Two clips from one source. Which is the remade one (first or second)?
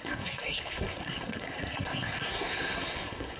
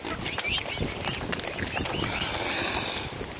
first